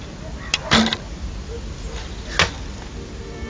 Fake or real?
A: real